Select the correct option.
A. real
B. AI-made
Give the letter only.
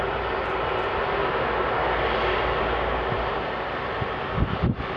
A